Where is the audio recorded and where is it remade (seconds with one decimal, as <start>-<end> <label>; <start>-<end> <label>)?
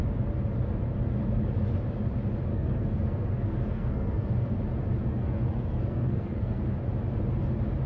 0.0-2.5 recorded; 2.5-4.5 remade; 4.5-5.0 recorded; 5.0-6.6 remade; 6.6-7.9 recorded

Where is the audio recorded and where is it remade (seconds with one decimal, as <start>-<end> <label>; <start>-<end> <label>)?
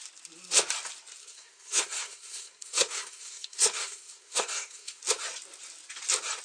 0.0-1.2 recorded; 1.2-5.0 remade; 5.0-6.4 recorded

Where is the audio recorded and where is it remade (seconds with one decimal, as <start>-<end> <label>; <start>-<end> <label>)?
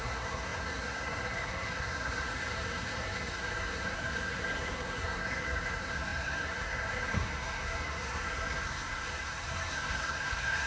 0.0-10.7 remade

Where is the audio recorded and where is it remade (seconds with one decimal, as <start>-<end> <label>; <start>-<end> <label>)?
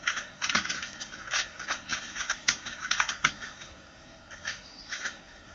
0.0-5.5 remade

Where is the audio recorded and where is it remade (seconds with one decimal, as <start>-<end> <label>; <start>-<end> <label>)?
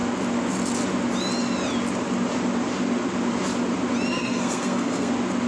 0.0-4.1 recorded; 4.1-5.1 remade; 5.1-5.5 recorded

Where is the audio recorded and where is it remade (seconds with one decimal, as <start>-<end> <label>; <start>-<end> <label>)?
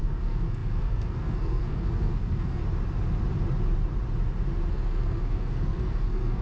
0.0-2.6 remade; 2.6-4.7 recorded; 4.7-6.4 remade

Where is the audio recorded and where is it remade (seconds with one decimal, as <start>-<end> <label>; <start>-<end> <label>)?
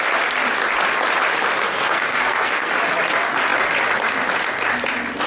0.0-1.6 recorded; 1.6-2.7 remade; 2.7-5.3 recorded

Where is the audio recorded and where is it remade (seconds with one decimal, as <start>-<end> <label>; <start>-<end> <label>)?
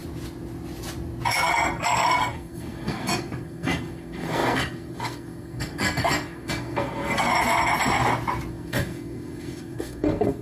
0.0-1.3 recorded; 1.3-7.3 remade; 7.3-8.5 recorded; 8.5-10.4 remade